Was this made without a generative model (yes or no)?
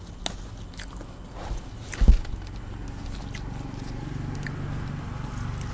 yes